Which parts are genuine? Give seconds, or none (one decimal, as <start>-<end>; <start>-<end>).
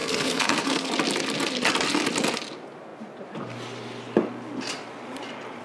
0.9-5.6